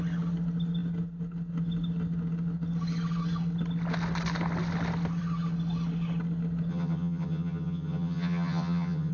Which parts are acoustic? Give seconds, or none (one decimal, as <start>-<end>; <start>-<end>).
0.0-6.7